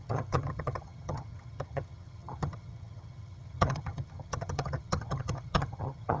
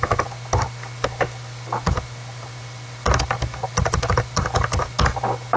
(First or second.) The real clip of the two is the second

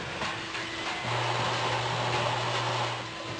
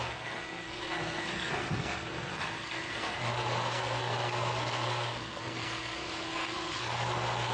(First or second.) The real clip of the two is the first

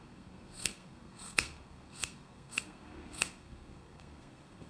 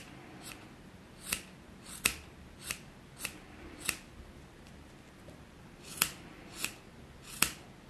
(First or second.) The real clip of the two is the second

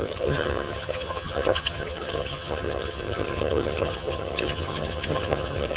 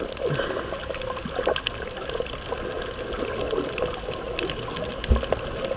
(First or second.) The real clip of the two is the second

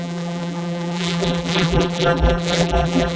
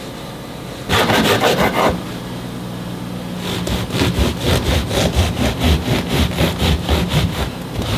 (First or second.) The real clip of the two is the second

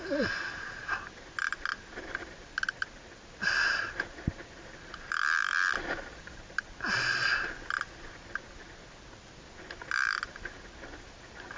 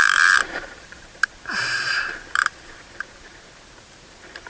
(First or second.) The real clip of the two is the first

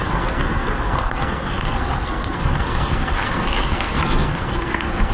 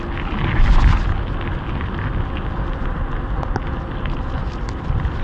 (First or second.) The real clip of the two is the second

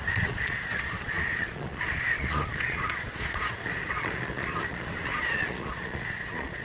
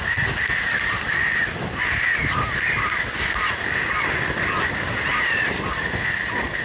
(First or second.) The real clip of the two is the second